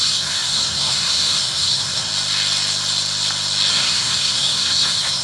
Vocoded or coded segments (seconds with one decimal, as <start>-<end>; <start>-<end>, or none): 0.0-2.1; 3.7-5.2